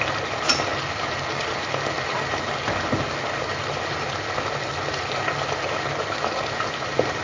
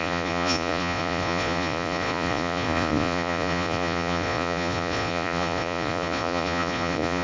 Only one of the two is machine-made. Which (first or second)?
second